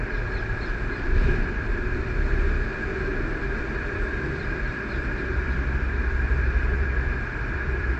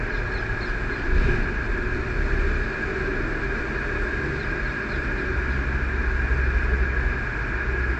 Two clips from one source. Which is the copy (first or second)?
first